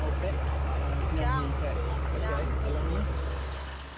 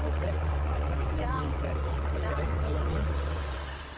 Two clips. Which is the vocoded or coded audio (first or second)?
second